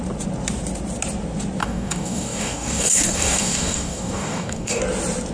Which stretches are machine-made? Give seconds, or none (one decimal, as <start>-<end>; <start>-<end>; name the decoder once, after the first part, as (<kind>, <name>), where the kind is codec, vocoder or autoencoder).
1.6-4.8 (codec, DAC)